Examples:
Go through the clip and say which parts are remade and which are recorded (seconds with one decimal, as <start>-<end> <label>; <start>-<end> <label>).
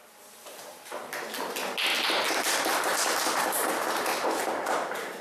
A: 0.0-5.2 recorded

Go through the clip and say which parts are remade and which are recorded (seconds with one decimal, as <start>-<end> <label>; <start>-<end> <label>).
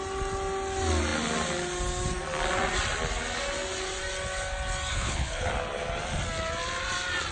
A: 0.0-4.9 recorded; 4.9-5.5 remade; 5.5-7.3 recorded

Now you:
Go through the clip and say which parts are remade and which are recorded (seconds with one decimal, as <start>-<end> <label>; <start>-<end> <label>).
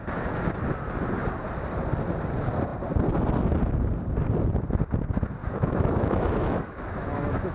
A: 0.0-5.4 recorded; 5.4-7.5 remade